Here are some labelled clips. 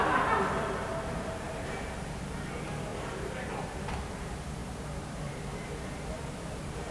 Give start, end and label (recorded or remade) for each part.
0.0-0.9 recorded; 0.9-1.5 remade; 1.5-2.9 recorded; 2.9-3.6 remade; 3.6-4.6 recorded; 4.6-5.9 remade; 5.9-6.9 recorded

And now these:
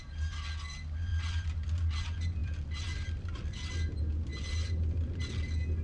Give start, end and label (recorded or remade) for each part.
0.0-1.1 recorded; 1.1-1.7 remade; 1.7-2.4 recorded; 2.4-3.7 remade; 3.7-5.8 recorded

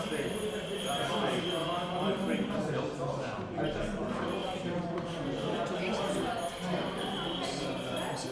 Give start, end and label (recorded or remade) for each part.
0.0-8.3 recorded

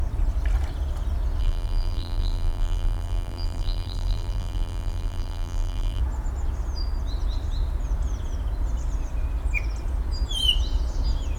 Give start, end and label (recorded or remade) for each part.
0.0-1.4 recorded; 1.4-6.0 remade; 6.0-11.4 recorded

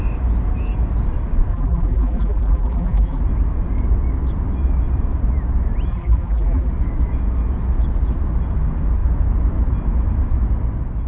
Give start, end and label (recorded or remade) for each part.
0.0-1.5 recorded; 1.5-3.2 remade; 3.2-5.9 recorded; 5.9-6.7 remade; 6.7-11.1 recorded